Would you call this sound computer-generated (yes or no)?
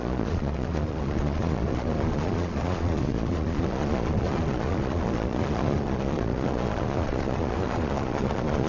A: yes